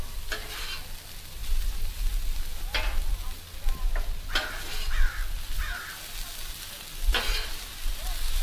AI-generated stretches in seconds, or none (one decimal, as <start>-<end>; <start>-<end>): none